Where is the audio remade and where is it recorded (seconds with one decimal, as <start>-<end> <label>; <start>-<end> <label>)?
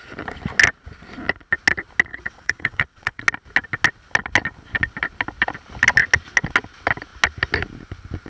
0.0-2.1 recorded; 2.1-3.2 remade; 3.2-8.3 recorded